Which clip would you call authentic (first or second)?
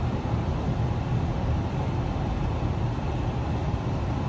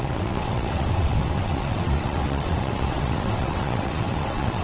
first